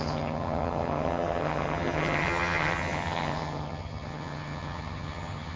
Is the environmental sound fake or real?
fake